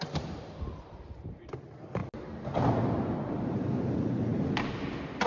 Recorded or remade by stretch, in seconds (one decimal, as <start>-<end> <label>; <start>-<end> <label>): 0.0-2.0 remade; 2.0-3.5 recorded; 3.5-4.3 remade; 4.3-5.3 recorded